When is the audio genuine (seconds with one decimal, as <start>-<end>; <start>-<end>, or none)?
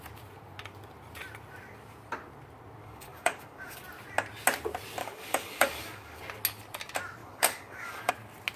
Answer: 0.0-2.8; 3.8-5.0; 6.2-7.2; 8.1-8.6